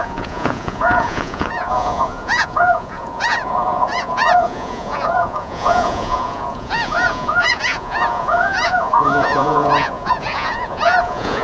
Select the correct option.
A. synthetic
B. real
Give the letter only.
A